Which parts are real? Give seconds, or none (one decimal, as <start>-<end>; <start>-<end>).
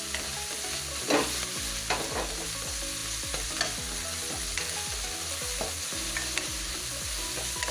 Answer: 0.0-7.7